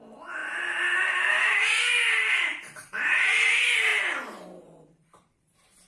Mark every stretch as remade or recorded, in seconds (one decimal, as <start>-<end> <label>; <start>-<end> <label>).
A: 0.0-2.5 recorded; 2.5-3.4 remade; 3.4-3.9 recorded; 3.9-5.9 remade